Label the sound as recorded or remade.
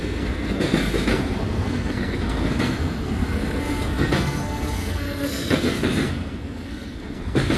remade